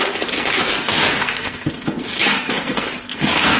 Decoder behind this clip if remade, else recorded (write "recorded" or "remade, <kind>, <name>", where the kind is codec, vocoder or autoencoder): remade, codec, SNAC